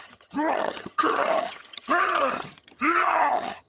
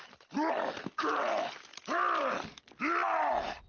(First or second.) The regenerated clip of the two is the first